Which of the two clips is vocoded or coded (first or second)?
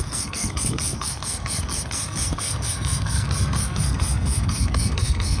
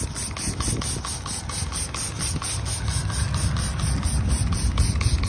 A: first